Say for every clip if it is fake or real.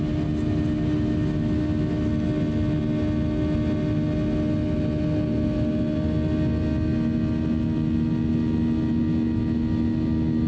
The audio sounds real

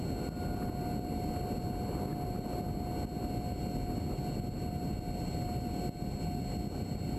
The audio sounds real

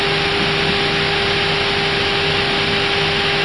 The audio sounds real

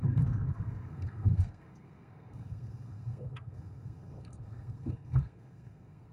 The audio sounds fake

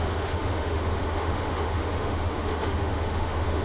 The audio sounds fake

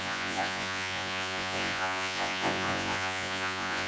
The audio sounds fake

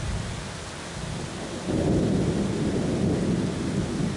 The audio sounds fake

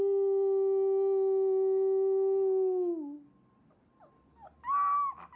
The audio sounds real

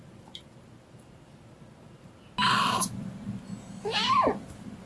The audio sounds real